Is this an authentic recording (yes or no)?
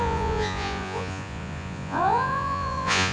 no